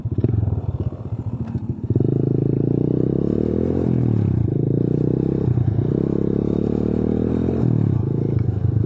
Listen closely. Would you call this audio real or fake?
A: fake